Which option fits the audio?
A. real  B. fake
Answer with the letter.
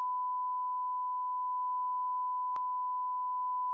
A